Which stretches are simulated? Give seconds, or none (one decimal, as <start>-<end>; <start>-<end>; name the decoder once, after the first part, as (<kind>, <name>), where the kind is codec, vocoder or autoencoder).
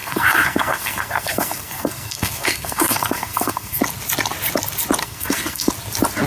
0.0-3.8 (codec, SNAC); 5.0-5.7